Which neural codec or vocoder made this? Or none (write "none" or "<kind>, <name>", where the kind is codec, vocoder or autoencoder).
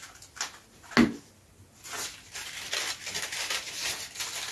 none